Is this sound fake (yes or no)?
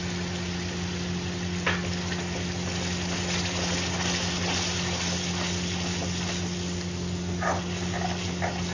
no